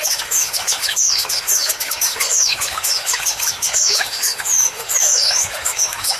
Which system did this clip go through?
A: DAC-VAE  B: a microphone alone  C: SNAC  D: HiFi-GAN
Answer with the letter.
A